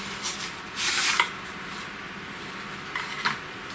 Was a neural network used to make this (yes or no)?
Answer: no